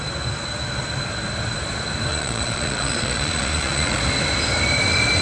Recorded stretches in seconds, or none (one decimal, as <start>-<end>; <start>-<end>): 0.0-2.1; 4.0-5.2